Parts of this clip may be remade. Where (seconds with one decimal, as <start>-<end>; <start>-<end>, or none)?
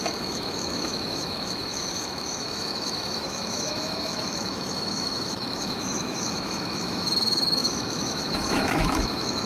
0.0-9.5